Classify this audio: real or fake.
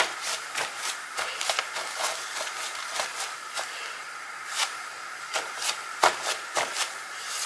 fake